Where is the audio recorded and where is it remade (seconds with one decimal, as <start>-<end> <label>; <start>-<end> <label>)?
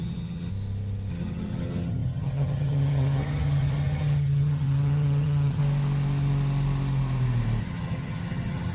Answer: 0.0-0.5 remade; 0.5-1.1 recorded; 1.1-5.6 remade; 5.6-7.6 recorded; 7.6-8.7 remade